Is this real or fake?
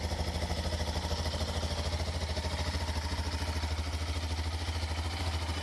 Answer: real